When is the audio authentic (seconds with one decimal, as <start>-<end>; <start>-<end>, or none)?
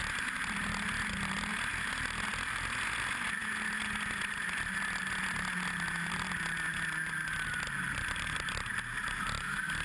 0.0-9.8